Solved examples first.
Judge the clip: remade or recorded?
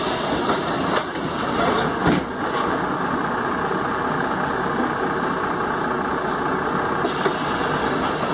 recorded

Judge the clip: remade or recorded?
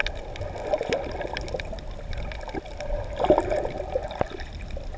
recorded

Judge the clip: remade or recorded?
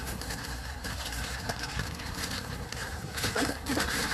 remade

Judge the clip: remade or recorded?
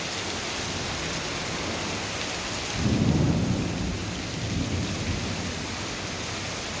recorded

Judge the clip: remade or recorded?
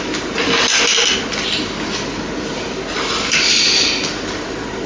recorded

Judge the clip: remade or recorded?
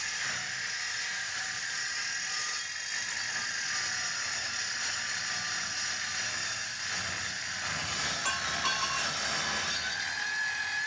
recorded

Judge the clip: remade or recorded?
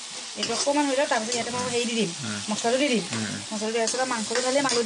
recorded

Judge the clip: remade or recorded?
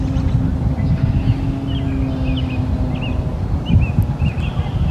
recorded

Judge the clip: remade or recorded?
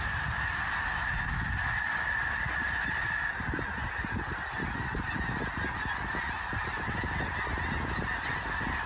recorded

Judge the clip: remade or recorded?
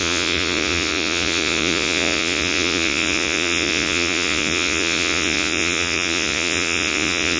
remade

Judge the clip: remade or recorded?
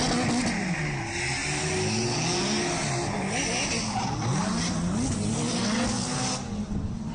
recorded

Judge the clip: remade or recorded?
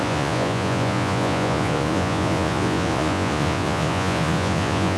remade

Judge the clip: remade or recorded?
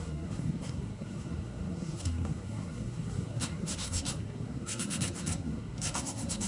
remade